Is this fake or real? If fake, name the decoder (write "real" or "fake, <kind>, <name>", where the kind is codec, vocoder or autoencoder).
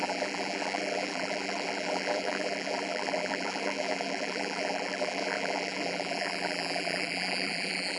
fake, vocoder, BigVGAN v2